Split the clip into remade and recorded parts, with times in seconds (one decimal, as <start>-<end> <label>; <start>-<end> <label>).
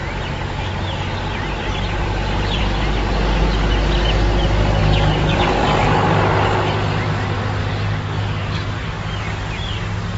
0.0-4.8 recorded; 4.8-6.2 remade; 6.2-7.6 recorded; 7.6-9.1 remade; 9.1-10.2 recorded